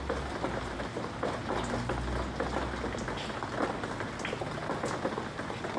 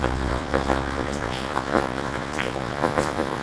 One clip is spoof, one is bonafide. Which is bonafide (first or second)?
first